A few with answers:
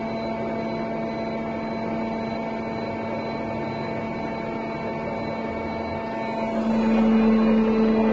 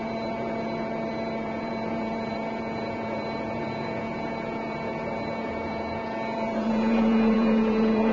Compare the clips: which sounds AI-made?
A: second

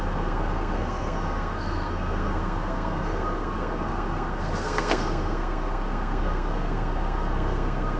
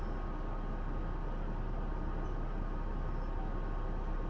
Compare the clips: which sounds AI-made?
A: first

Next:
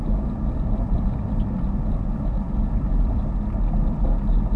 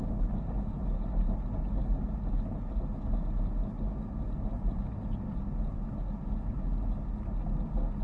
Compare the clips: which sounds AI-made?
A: first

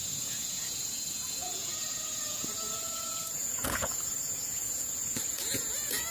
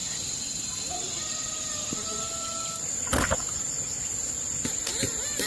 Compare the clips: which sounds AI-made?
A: first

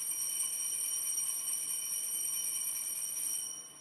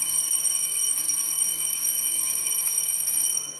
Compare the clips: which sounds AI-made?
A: second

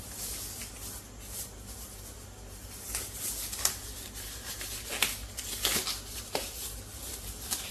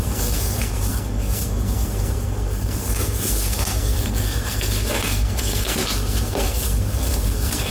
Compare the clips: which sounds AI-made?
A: second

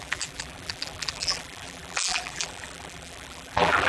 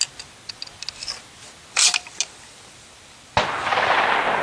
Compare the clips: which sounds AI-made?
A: first